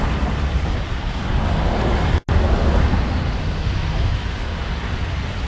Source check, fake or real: real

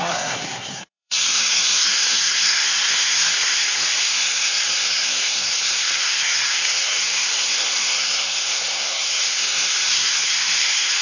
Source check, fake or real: fake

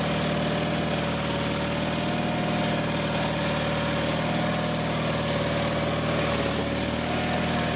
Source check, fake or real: real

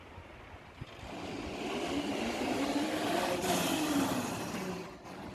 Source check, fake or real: real